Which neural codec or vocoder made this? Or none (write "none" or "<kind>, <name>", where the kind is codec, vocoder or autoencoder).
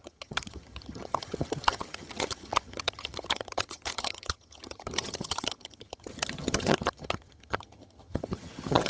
vocoder, HiFi-GAN